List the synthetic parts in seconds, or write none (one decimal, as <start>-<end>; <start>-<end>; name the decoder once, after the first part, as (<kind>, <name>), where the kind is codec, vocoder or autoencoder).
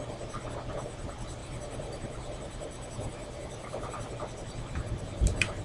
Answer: 1.4-4.1 (vocoder, BigVGAN v2)